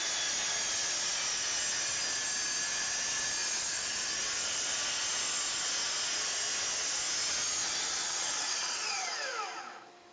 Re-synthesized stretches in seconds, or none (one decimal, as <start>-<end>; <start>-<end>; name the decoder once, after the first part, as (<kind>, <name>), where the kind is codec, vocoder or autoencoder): 8.0-9.1 (vocoder, WaveNeXt)